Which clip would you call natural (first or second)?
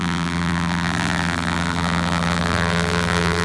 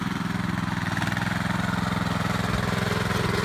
second